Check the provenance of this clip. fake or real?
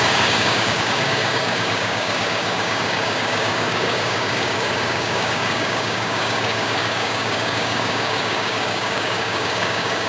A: fake